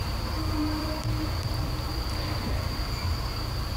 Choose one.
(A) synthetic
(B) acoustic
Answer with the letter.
A